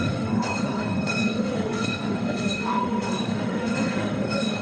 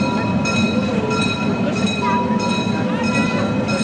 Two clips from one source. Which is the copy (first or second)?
first